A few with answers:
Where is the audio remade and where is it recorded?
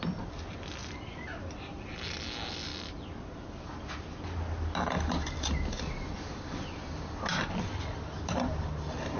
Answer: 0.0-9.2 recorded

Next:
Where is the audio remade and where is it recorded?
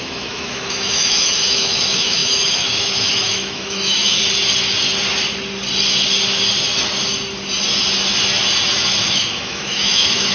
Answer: 0.0-4.2 remade; 4.2-9.0 recorded; 9.0-10.3 remade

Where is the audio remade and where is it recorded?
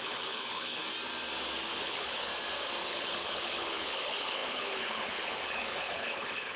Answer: 0.0-0.8 remade; 0.8-1.7 recorded; 1.7-2.3 remade; 2.3-2.8 recorded; 2.8-6.6 remade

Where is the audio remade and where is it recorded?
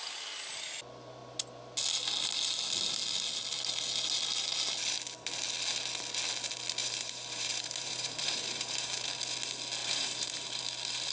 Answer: 0.0-6.8 recorded; 6.8-9.2 remade; 9.2-9.8 recorded; 9.8-10.6 remade; 10.6-11.1 recorded